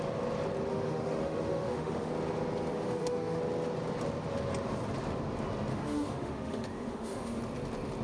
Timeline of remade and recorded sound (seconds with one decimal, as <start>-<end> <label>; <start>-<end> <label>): 0.0-0.7 recorded; 0.7-2.1 remade; 2.1-2.7 recorded; 2.7-3.4 remade; 3.4-5.7 recorded; 5.7-7.4 remade; 7.4-8.0 recorded

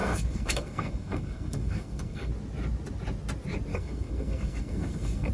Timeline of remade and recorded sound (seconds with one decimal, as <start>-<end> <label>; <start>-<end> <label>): 0.0-2.3 remade; 2.3-3.7 recorded; 3.7-5.3 remade

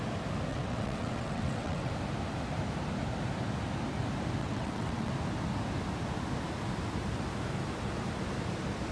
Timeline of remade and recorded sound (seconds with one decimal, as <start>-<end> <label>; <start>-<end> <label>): 0.0-0.5 recorded; 0.5-1.9 remade; 1.9-4.4 recorded; 4.4-5.1 remade; 5.1-8.9 recorded

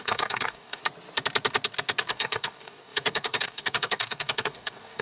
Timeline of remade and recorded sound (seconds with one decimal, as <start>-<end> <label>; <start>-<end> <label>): 0.0-0.8 remade; 0.8-2.1 recorded; 2.1-5.0 remade

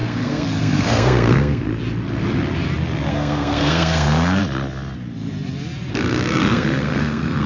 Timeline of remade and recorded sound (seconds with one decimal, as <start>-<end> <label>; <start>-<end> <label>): 0.0-1.7 remade; 1.7-3.1 recorded; 3.1-4.4 remade; 4.4-5.9 recorded; 5.9-7.5 remade

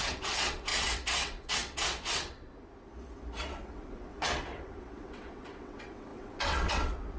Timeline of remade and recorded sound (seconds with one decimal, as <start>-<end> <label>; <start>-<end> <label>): 0.0-2.5 remade; 2.5-3.4 recorded; 3.4-7.2 remade